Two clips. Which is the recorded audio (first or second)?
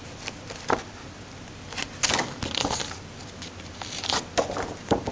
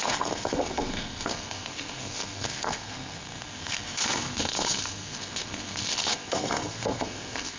first